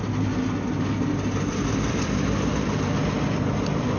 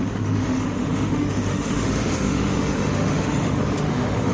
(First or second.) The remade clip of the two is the second